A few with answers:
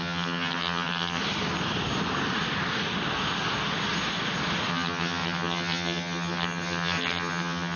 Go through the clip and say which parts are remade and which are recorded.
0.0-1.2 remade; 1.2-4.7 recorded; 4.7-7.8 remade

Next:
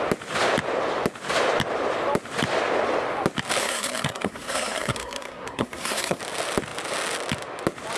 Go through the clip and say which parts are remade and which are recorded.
0.0-3.6 recorded; 3.6-6.2 remade; 6.2-8.0 recorded